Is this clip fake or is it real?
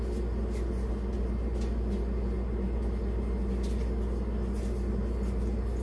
real